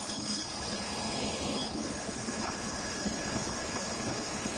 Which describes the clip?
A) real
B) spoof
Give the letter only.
B